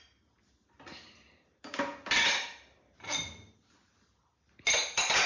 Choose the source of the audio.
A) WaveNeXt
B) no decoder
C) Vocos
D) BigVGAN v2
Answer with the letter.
B